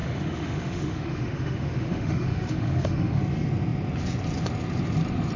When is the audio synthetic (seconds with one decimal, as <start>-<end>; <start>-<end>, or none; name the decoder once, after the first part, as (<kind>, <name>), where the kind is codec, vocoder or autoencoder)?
0.0-3.2 (autoencoder, DAC-VAE)